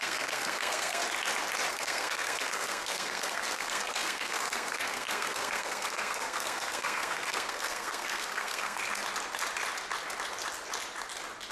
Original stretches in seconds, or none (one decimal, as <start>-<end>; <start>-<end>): 1.0-1.7; 8.8-11.5